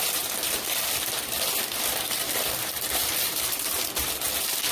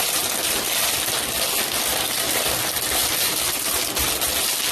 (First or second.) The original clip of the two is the second